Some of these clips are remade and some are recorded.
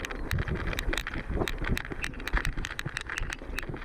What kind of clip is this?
recorded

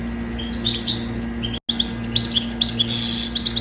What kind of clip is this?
recorded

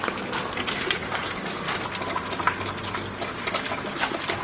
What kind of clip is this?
recorded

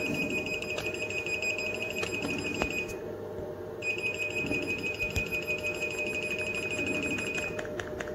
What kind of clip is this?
remade